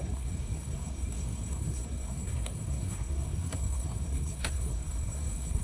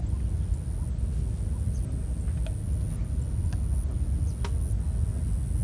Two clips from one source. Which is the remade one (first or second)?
first